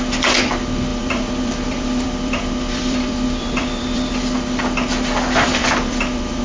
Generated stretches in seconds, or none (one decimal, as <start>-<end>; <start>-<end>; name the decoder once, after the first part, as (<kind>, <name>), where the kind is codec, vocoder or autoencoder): 0.9-4.1 (vocoder, BigVGAN v2); 5.6-6.4